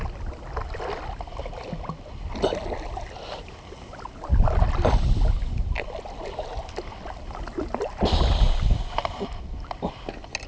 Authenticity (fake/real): real